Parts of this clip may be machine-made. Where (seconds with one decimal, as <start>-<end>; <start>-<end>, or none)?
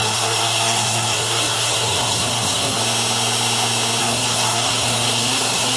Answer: 0.0-2.8; 4.0-5.8